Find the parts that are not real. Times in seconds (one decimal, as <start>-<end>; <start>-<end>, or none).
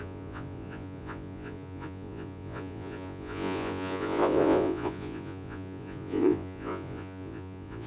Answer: 0.0-7.9